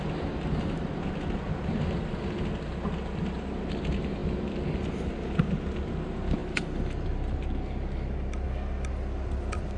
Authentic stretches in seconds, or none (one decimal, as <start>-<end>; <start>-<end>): 0.0-9.8